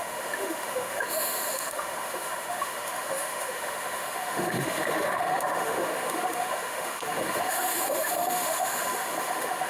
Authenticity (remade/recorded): remade